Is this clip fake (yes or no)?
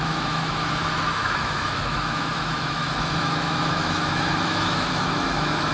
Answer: yes